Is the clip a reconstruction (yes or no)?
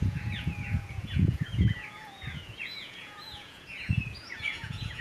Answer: yes